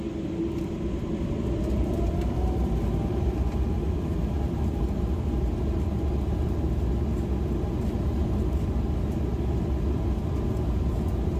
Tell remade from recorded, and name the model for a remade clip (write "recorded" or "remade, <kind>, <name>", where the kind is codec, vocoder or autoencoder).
recorded